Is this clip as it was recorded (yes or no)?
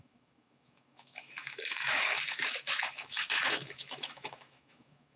no